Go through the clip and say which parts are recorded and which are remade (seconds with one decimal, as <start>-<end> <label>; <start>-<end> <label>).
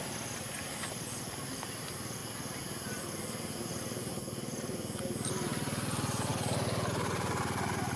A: 0.0-8.0 recorded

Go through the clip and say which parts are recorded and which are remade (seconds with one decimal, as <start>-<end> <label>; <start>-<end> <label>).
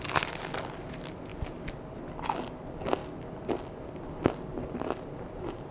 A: 0.0-5.7 recorded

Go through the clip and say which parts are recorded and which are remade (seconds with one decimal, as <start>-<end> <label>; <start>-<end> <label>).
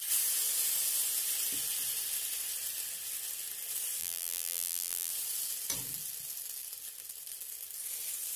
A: 0.0-4.0 recorded; 4.0-5.1 remade; 5.1-8.4 recorded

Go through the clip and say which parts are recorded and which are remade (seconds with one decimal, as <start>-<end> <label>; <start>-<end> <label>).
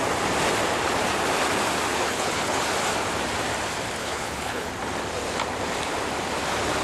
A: 0.0-1.9 recorded; 1.9-2.6 remade; 2.6-4.0 recorded; 4.0-4.7 remade; 4.7-6.8 recorded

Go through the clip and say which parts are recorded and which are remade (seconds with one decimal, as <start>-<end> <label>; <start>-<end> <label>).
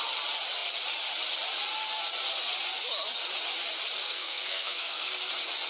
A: 0.0-4.0 recorded; 4.0-5.3 remade; 5.3-5.7 recorded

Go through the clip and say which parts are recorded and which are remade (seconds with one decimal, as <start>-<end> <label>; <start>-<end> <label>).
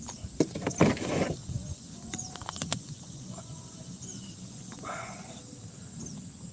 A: 0.0-1.4 recorded; 1.4-5.3 remade; 5.3-6.5 recorded